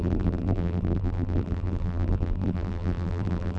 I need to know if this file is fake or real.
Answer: fake